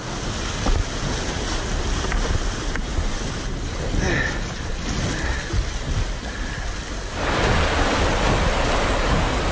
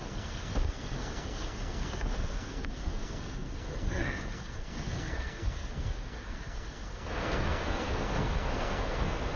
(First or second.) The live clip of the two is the first